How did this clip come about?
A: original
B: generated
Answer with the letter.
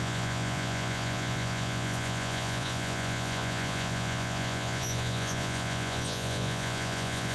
B